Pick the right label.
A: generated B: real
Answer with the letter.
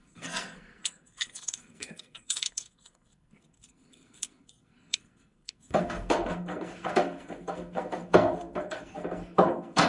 A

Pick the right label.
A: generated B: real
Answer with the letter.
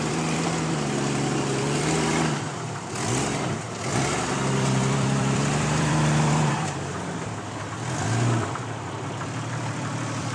A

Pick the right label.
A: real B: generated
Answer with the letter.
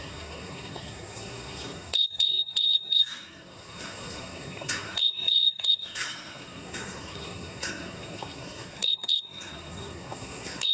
B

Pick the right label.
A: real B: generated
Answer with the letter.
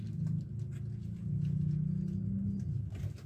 A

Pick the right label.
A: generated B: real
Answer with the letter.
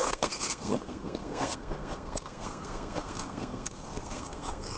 A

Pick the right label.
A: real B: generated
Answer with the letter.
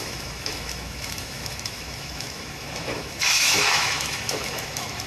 B